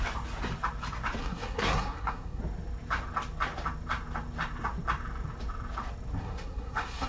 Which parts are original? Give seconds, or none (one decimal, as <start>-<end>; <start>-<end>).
0.0-1.2; 2.4-6.2